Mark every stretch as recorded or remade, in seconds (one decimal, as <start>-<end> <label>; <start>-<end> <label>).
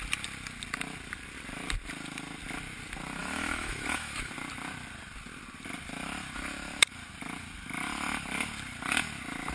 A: 0.0-3.2 recorded; 3.2-4.3 remade; 4.3-9.5 recorded